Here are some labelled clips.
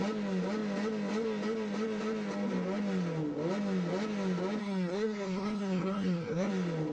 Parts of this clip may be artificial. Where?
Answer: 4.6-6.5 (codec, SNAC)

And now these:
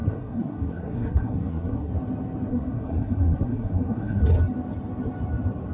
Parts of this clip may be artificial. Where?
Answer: 0.0-1.9 (codec, SNAC); 2.5-4.2

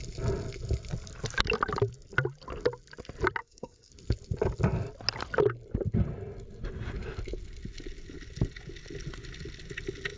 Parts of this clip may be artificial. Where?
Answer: 3.4-3.9 (codec, SNAC)

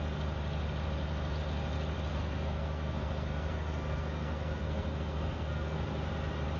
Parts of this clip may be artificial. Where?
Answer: 2.1-6.1 (codec, SNAC)

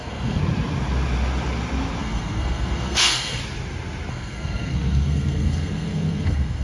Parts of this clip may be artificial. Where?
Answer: 0.0-0.4 (codec, SNAC); 2.0-3.4; 4.1-6.6

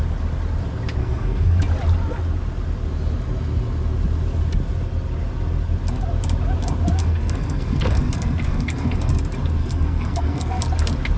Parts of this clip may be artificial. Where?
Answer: 1.0-1.6 (codec, SNAC); 7.0-9.1; 9.6-10.6